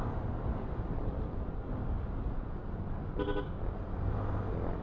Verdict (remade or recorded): recorded